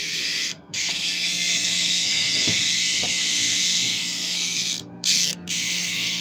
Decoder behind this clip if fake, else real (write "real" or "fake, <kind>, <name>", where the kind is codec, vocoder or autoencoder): fake, codec, SNAC